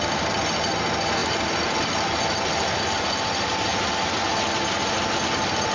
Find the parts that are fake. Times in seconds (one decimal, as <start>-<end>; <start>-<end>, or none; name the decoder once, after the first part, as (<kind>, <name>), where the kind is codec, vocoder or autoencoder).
none